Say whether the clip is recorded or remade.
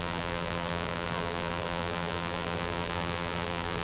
remade